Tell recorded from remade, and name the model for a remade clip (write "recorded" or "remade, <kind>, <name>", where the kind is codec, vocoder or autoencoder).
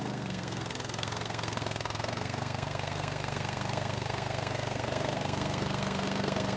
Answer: remade, codec, SNAC